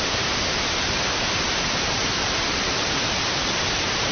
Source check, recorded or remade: remade